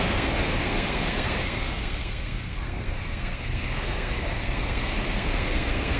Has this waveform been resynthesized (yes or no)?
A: yes